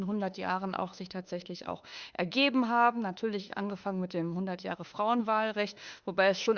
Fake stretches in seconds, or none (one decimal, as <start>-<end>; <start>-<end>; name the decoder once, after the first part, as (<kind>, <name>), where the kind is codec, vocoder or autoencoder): 0.0-6.6 (autoencoder, DAC-VAE)